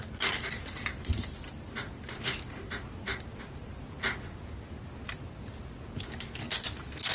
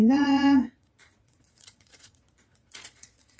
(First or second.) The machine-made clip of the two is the second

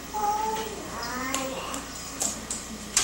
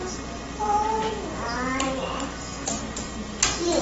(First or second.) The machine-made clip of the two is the first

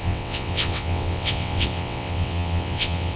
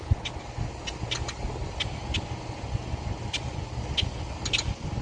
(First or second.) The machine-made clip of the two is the first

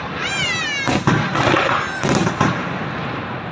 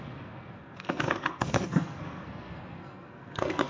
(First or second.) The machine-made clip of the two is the second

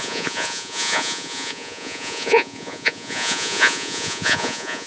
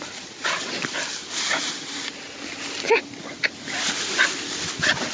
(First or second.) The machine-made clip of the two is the first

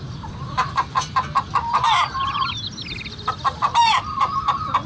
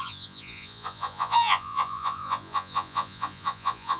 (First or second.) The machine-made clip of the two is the second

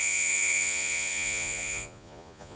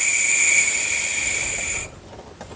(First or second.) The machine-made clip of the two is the first